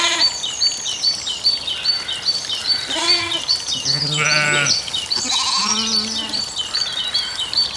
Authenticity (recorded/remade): recorded